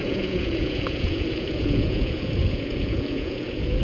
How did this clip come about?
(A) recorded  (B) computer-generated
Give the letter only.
B